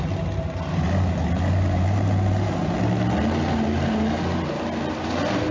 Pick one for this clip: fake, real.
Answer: real